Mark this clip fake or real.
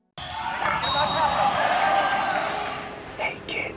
real